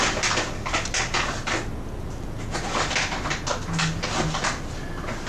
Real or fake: real